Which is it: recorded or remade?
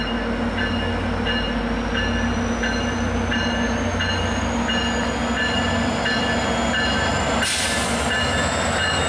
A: recorded